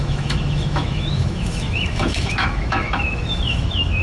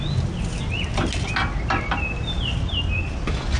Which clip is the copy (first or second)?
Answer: first